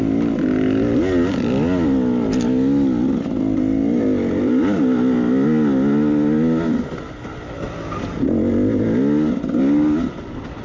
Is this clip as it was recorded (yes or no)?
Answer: yes